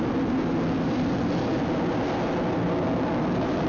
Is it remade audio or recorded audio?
recorded